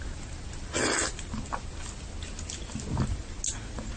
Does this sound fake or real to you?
real